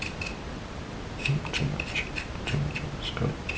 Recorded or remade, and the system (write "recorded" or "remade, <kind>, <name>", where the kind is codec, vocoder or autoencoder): recorded